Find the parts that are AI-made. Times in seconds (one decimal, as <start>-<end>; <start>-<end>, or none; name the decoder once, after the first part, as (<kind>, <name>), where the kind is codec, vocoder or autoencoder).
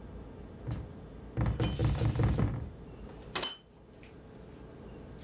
none